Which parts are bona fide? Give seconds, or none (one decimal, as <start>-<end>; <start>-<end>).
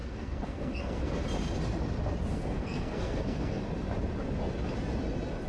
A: 1.1-2.3; 3.6-5.5